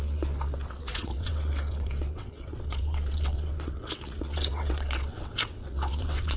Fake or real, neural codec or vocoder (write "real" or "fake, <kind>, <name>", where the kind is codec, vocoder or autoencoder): fake, vocoder, WaveNeXt